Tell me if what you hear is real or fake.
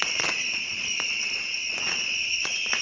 fake